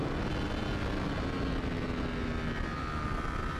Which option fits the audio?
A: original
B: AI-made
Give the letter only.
A